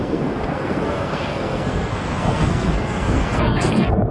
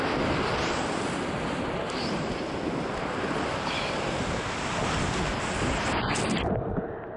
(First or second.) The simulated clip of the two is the first